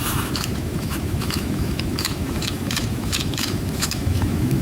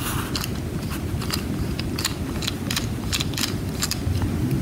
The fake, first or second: first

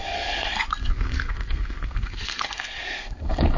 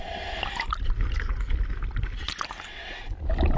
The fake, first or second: first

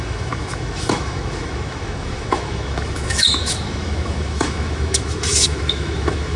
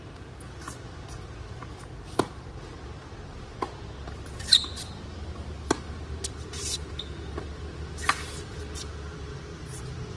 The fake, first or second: first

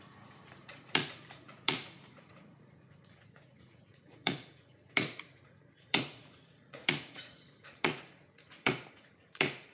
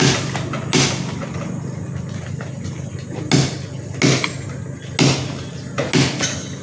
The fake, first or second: first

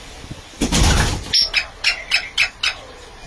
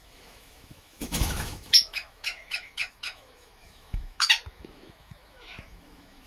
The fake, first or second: second